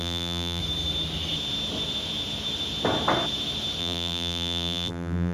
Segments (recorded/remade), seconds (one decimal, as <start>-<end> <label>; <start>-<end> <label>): 0.0-0.6 remade; 0.6-3.8 recorded; 3.8-5.3 remade